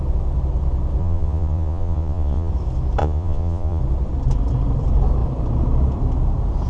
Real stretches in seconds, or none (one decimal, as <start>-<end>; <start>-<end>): 0.0-1.0; 2.5-3.0; 3.8-6.7

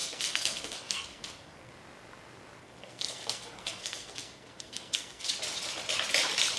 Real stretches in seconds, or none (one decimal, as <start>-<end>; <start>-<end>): 1.7-2.6; 5.3-6.6

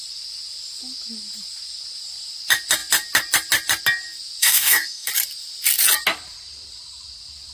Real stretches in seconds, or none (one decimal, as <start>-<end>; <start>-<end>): 0.0-4.4; 5.1-7.5